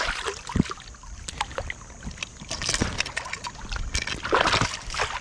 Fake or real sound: real